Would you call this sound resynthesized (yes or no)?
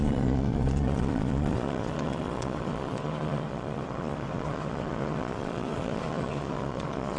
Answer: yes